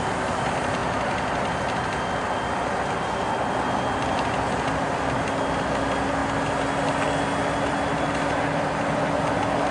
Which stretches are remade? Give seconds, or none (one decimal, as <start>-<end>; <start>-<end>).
none